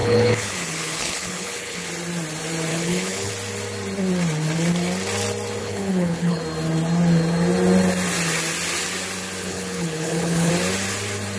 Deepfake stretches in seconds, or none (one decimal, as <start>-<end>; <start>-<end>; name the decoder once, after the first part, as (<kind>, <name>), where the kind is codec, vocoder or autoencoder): 0.0-1.9 (codec, HILCodec); 2.7-3.3; 5.6-6.4; 9.4-10.5